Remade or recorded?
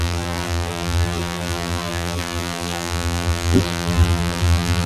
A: remade